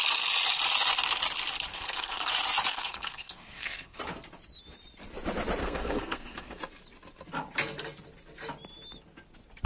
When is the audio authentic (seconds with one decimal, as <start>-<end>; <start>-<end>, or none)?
0.0-1.7; 2.3-2.7; 4.0-5.6; 6.6-9.7